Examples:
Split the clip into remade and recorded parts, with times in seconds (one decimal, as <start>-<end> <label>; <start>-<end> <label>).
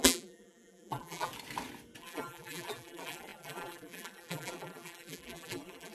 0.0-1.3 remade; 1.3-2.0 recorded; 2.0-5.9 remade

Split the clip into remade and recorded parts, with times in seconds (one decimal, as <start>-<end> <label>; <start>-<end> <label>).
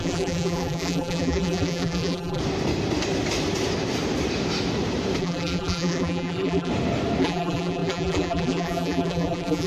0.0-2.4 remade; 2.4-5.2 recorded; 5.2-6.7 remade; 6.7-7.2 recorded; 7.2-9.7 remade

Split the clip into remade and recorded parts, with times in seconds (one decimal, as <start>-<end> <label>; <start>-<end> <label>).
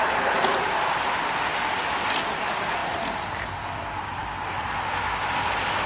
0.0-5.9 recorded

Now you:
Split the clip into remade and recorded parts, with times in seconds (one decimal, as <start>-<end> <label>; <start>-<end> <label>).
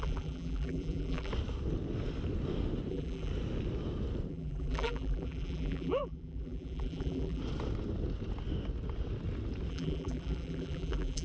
0.0-1.3 remade; 1.3-2.9 recorded; 2.9-3.3 remade; 3.3-4.3 recorded; 4.3-7.4 remade; 7.4-9.7 recorded; 9.7-11.2 remade